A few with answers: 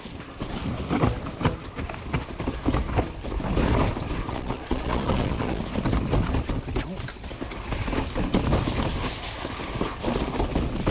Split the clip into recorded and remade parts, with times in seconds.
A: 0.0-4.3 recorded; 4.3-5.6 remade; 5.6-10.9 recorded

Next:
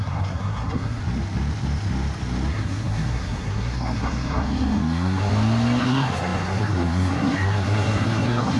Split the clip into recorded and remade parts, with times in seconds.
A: 0.0-1.0 remade; 1.0-2.5 recorded; 2.5-5.3 remade; 5.3-5.8 recorded; 5.8-8.6 remade

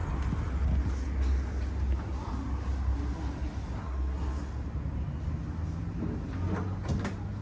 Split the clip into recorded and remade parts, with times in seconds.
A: 0.0-3.8 recorded; 3.8-4.5 remade; 4.5-7.4 recorded